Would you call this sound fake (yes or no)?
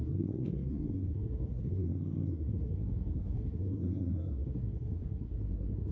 yes